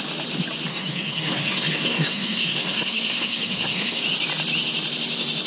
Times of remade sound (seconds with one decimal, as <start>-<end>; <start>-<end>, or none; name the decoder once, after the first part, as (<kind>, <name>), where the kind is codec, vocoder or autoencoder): 0.7-4.0 (codec, SNAC)